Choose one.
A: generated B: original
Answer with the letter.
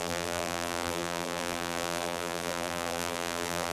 A